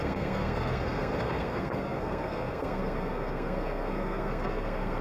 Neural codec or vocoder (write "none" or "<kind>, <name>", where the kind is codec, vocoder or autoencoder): codec, SNAC